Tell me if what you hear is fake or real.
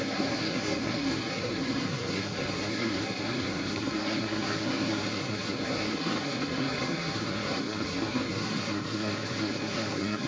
fake